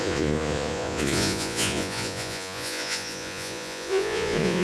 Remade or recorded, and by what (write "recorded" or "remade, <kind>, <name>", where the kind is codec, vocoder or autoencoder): remade, vocoder, Vocos